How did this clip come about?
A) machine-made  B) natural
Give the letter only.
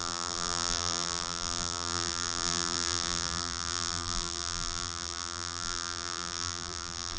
A